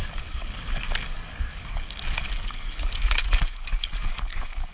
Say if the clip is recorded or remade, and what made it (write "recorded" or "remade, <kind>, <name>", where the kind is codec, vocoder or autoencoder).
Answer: remade, codec, DAC